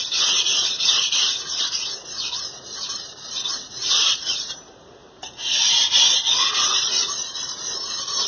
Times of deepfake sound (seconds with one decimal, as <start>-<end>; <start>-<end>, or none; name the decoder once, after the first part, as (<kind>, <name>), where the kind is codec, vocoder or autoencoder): 3.5-6.0 (vocoder, BigVGAN v2)